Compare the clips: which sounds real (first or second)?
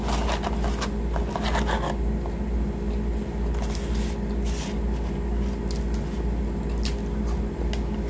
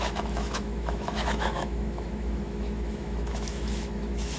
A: first